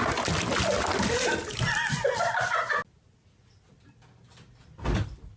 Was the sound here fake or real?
real